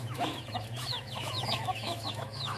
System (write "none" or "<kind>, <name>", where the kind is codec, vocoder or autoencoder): autoencoder, DAC-VAE